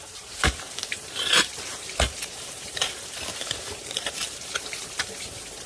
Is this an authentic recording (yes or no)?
no